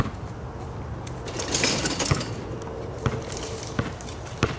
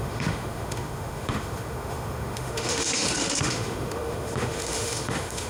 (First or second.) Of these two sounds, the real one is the first